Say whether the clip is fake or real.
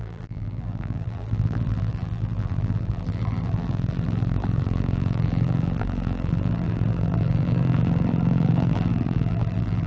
fake